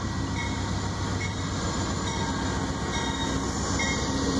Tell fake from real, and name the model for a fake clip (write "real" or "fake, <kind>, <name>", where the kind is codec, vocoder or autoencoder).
real